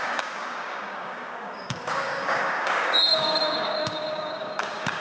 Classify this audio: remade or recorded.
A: remade